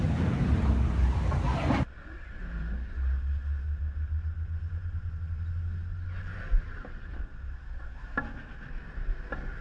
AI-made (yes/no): no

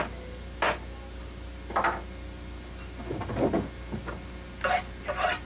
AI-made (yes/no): no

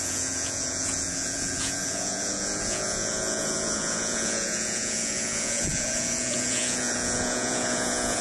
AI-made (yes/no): yes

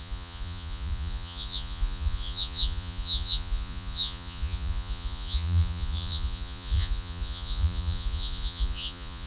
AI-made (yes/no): yes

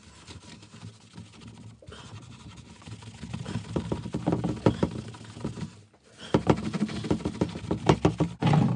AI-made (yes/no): no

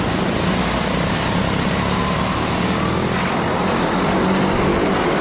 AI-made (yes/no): no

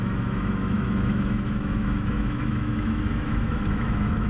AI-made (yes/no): yes